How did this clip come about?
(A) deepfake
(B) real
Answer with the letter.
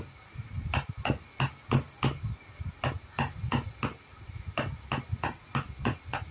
B